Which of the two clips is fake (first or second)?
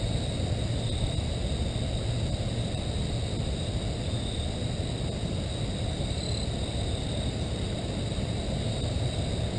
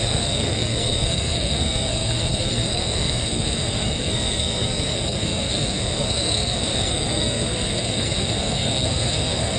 second